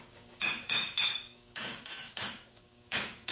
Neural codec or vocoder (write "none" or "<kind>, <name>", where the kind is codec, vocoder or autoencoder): codec, DAC